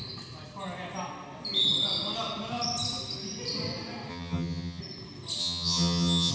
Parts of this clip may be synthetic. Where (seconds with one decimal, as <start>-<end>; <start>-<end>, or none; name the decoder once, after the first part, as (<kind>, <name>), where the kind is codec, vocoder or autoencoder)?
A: 4.1-4.8 (vocoder, HiFi-GAN); 5.4-6.3

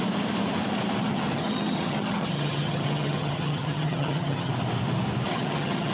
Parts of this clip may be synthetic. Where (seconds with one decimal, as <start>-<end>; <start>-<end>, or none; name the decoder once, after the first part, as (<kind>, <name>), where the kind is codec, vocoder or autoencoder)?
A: 1.0-4.5 (vocoder, HiFi-GAN); 5.3-5.9

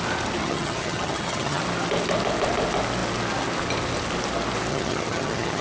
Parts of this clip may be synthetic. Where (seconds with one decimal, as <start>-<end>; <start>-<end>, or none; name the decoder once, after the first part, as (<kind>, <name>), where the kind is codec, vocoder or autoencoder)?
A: 0.4-1.6 (vocoder, HiFi-GAN); 4.7-5.6

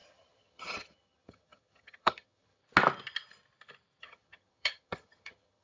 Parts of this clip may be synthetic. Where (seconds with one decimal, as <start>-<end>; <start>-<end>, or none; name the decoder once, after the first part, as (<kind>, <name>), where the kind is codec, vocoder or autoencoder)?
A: 0.0-2.6 (vocoder, HiFi-GAN); 4.0-5.6